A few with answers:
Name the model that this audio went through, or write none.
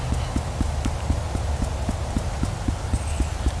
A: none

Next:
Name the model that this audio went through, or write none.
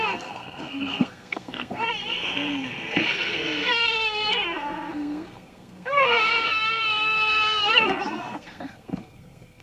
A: codec, SNAC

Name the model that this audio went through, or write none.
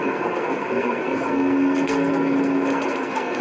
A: codec, SNAC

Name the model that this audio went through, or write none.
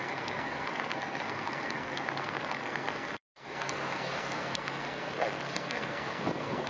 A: codec, SNAC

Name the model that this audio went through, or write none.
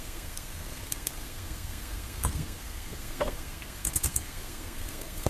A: codec, SNAC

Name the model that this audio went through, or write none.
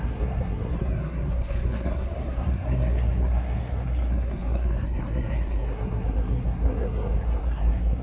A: codec, SNAC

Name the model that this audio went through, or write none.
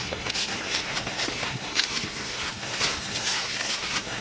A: codec, SNAC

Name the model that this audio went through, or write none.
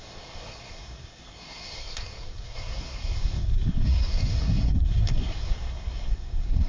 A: codec, SNAC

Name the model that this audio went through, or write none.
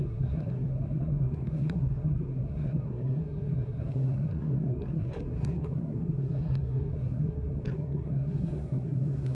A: codec, SNAC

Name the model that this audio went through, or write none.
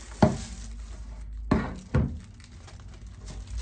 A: none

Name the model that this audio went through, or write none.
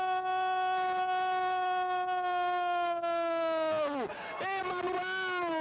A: none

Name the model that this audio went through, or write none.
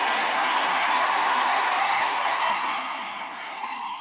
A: codec, SNAC